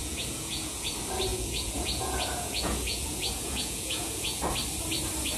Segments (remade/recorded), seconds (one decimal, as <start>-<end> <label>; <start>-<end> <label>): 0.0-0.9 remade; 0.9-1.3 recorded; 1.3-4.5 remade; 4.5-5.4 recorded